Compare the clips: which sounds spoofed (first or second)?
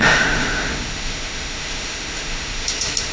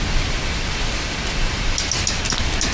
first